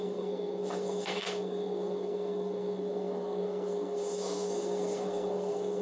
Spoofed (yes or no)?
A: yes